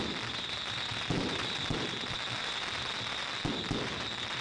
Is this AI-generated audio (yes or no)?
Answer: no